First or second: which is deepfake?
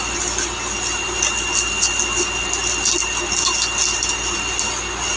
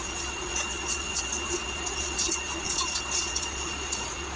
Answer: second